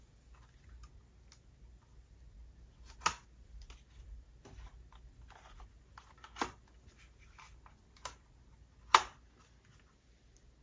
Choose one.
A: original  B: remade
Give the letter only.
A